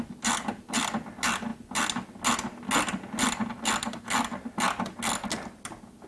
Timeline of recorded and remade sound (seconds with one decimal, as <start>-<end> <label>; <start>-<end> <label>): 0.0-6.1 recorded